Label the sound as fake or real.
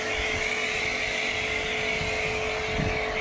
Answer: real